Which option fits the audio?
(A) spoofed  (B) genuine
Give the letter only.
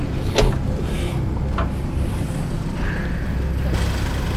B